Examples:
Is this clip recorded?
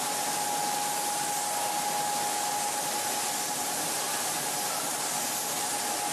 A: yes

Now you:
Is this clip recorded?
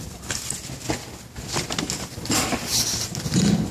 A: yes